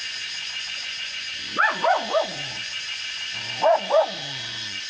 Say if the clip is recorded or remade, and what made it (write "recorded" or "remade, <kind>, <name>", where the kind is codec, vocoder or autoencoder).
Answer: remade, vocoder, Vocos